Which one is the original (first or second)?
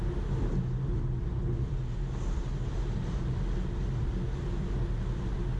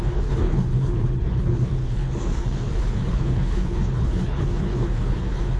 first